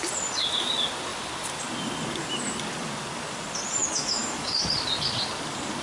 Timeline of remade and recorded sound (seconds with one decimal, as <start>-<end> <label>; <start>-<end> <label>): 0.0-3.8 recorded; 3.8-4.6 remade; 4.6-5.8 recorded